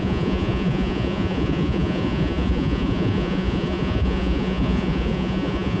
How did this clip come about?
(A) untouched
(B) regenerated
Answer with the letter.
B